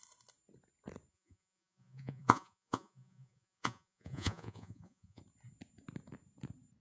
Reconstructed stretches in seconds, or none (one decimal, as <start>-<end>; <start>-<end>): 1.1-5.2